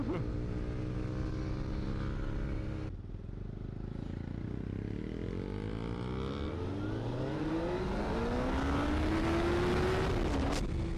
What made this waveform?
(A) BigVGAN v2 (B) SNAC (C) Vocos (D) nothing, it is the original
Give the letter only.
D